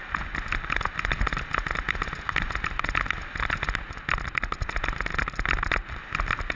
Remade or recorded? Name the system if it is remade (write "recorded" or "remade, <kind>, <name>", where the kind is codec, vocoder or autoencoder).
recorded